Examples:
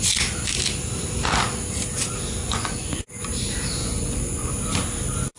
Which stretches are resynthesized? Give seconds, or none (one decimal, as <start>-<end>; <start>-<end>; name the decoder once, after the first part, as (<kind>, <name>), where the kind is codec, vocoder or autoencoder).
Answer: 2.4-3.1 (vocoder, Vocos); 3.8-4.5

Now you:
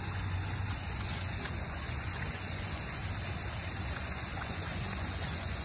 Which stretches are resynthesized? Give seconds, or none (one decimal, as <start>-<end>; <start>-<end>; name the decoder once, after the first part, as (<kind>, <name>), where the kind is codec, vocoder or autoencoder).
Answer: 0.0-3.0 (vocoder, Vocos); 3.8-5.6

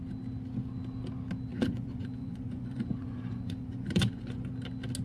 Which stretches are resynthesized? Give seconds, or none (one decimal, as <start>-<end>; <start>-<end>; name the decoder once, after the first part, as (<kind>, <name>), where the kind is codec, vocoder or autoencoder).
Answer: 1.5-4.5 (vocoder, Vocos)